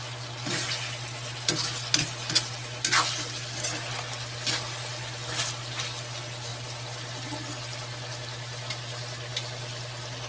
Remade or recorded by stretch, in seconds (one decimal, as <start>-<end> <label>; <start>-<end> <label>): 0.0-10.3 recorded